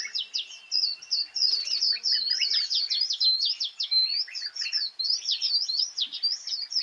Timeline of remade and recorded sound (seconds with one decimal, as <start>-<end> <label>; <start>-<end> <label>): 0.0-6.8 recorded